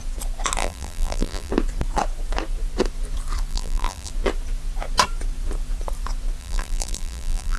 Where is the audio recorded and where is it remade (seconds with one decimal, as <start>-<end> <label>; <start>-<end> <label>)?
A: 0.0-0.6 recorded; 0.6-1.5 remade; 1.5-3.5 recorded; 3.5-4.1 remade; 4.1-6.4 recorded; 6.4-7.6 remade